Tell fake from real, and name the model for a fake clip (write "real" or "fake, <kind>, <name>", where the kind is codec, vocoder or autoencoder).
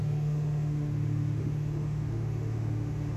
fake, autoencoder, DAC-VAE